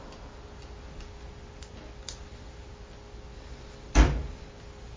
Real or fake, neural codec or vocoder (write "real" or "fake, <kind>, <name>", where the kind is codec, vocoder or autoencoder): real